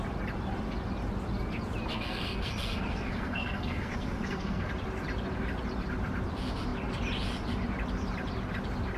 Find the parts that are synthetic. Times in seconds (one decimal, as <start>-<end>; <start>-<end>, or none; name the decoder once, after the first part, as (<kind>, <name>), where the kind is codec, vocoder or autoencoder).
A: 1.9-4.7 (codec, SNAC)